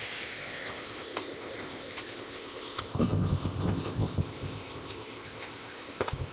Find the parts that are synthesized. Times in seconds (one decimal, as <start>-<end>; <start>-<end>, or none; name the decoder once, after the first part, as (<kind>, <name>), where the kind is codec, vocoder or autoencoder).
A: 0.0-6.3 (codec, ZipCodec)